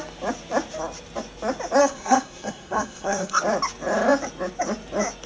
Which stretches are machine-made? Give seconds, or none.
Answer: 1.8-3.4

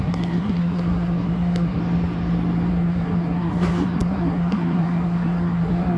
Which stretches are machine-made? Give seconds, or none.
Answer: 0.0-1.8; 2.7-6.0